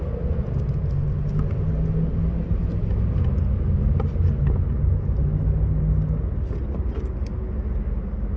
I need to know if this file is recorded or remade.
recorded